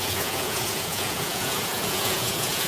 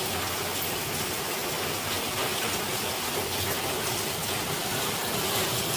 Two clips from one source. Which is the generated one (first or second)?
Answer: first